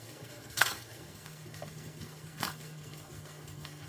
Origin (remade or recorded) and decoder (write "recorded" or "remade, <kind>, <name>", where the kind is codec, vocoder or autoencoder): remade, codec, SNAC